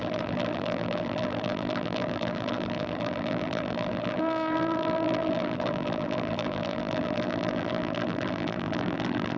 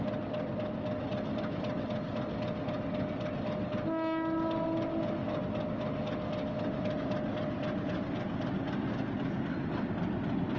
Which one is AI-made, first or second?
first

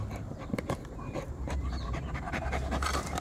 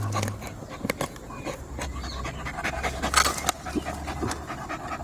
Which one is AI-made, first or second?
first